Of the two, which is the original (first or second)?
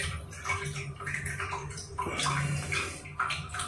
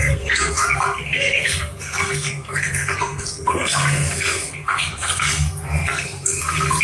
first